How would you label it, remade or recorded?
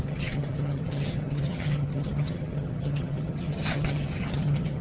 remade